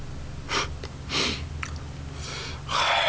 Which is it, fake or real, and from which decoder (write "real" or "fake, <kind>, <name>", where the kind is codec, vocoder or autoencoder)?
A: real